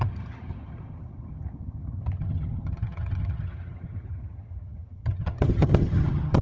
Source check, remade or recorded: remade